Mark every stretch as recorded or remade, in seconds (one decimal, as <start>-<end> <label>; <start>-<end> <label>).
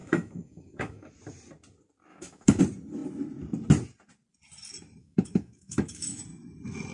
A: 0.0-1.1 remade; 1.1-2.1 recorded; 2.1-2.6 remade; 2.6-5.0 recorded; 5.0-6.2 remade; 6.2-6.9 recorded